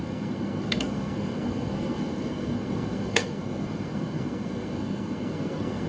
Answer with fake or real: fake